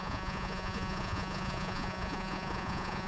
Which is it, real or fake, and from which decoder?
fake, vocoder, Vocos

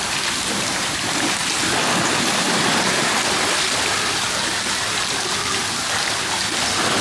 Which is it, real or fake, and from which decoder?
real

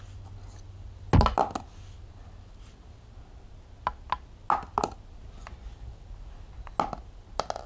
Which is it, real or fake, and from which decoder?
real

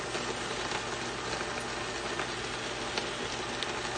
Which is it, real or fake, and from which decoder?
real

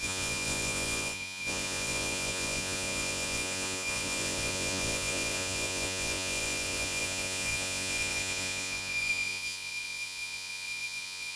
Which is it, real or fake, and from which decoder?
fake, vocoder, Vocos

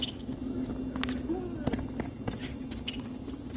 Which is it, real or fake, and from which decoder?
real